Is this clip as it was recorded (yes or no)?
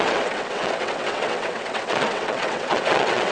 no